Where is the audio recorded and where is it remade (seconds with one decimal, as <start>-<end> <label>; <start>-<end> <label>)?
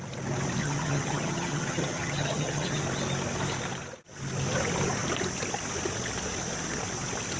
0.0-0.6 recorded; 0.6-2.8 remade; 2.8-7.4 recorded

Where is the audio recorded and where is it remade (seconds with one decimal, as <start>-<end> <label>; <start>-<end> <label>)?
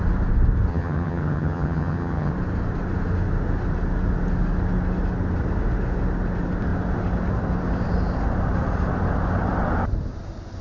0.0-0.7 recorded; 0.7-2.3 remade; 2.3-10.6 recorded